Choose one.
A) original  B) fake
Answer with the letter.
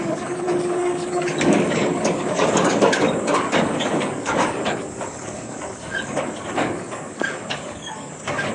B